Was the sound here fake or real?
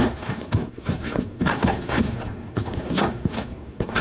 fake